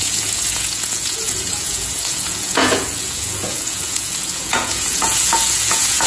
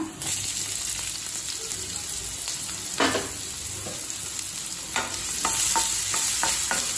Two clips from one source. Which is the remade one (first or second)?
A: first